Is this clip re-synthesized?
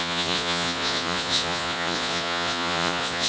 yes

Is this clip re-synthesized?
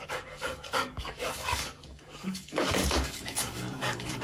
yes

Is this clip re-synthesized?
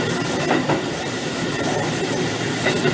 no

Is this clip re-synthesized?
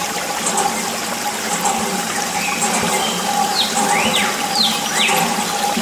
no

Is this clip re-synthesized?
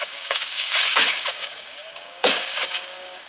yes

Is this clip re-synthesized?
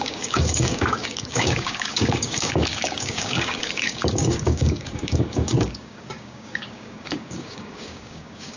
yes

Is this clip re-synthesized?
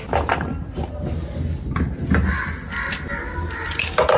no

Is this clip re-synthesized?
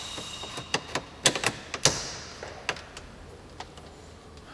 no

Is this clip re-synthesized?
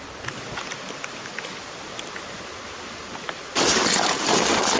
no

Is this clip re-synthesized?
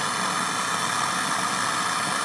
no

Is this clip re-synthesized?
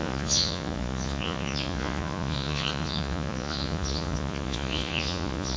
yes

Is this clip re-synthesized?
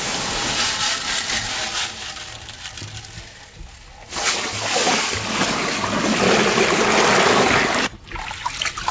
no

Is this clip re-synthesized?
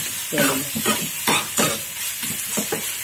no